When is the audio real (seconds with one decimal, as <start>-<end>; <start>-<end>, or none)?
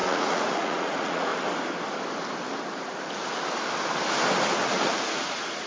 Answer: 1.3-4.7